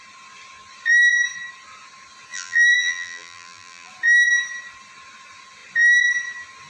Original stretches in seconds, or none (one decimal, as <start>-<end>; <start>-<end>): 0.0-2.3; 3.9-6.7